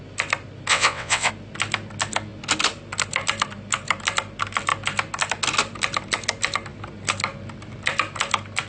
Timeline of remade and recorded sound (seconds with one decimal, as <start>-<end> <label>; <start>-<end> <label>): 0.0-0.7 recorded; 0.7-1.3 remade; 1.3-8.7 recorded